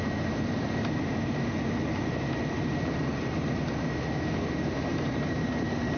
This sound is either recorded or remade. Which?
remade